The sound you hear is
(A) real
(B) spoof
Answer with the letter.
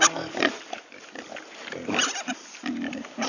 A